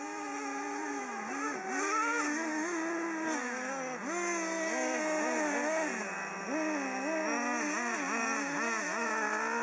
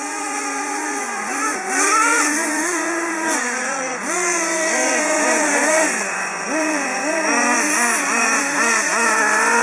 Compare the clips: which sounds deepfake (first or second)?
second